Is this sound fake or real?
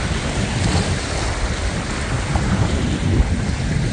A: real